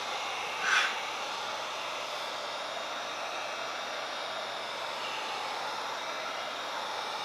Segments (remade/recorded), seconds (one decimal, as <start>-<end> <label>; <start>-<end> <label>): 0.0-7.2 recorded